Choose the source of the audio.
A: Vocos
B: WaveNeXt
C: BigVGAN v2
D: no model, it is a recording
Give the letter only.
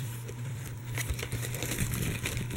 C